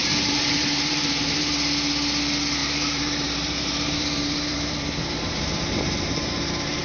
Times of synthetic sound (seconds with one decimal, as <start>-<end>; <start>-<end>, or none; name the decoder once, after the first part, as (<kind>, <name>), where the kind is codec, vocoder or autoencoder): 0.0-1.5 (vocoder, BigVGAN v2); 2.6-6.8